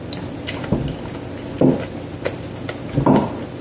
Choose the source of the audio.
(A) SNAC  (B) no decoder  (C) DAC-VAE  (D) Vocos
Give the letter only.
B